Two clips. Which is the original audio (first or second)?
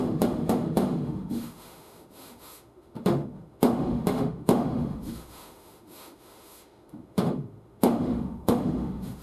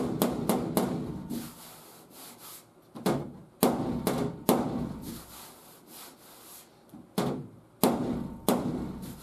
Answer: second